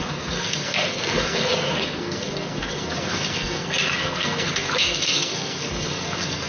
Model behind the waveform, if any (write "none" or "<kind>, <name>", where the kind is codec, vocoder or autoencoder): codec, SNAC